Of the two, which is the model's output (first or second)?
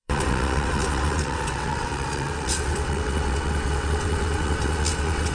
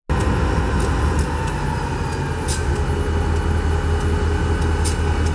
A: first